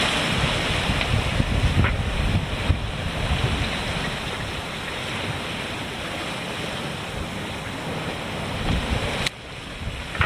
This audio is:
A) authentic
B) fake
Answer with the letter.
A